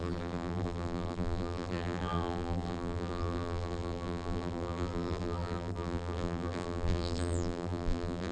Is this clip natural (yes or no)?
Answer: no